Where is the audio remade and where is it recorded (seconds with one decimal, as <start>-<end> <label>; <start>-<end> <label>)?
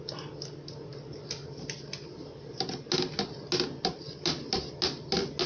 0.0-5.5 recorded